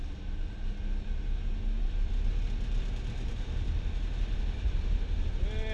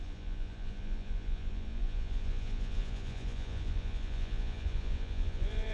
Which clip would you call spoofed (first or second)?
second